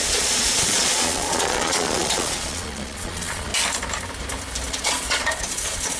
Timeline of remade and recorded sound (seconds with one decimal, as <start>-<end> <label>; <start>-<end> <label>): 0.0-3.5 remade; 3.5-4.7 recorded; 4.7-6.0 remade